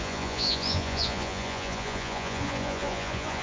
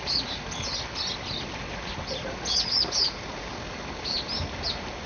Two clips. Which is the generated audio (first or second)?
first